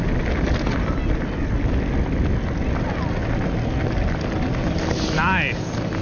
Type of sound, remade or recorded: recorded